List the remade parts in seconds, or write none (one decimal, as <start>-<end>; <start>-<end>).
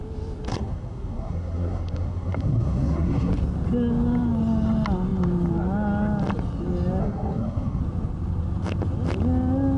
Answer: 0.5-3.3; 7.0-7.8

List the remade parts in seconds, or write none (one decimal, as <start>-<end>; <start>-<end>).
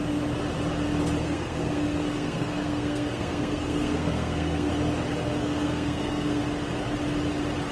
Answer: 1.2-4.7; 5.4-6.4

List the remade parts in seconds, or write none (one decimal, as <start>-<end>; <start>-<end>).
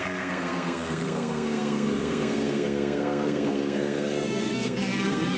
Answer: 0.0-5.4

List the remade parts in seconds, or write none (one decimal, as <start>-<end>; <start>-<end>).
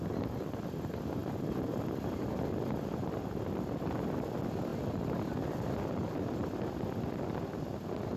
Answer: none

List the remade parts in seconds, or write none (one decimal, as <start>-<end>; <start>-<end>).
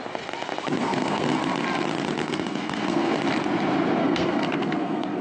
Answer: 0.8-1.4; 2.2-3.2; 4.0-5.2